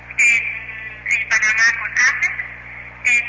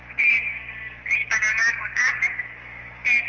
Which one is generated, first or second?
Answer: second